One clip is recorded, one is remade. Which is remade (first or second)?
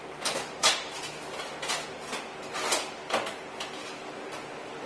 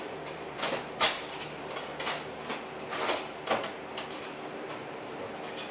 second